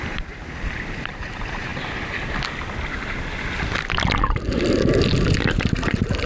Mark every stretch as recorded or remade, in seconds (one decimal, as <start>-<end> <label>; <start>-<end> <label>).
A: 0.0-1.7 remade; 1.7-5.5 recorded; 5.5-6.3 remade